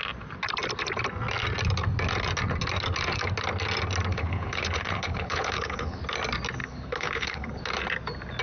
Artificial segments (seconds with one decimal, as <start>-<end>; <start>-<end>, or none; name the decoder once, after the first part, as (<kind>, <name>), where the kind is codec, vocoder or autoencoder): 4.1-6.0 (codec, HILCodec); 6.6-7.6